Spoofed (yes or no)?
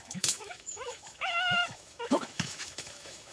yes